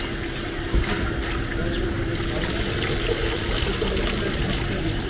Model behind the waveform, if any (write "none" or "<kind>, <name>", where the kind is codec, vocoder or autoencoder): none